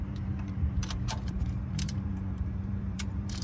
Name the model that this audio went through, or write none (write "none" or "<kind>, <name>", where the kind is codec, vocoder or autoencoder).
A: vocoder, BigVGAN v2